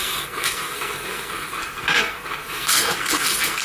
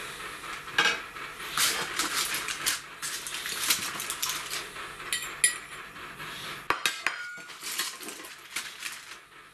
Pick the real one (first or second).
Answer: second